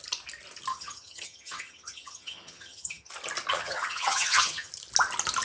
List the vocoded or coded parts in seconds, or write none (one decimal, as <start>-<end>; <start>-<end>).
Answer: 0.7-3.1; 3.5-4.7